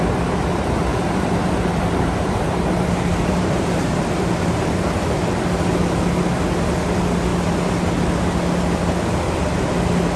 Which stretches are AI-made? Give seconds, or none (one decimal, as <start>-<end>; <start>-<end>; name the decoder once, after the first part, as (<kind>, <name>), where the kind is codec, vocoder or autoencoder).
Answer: 0.9-5.3 (vocoder, BigVGAN v2)